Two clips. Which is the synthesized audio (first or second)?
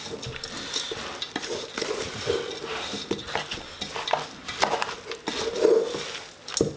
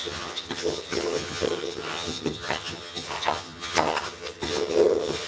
second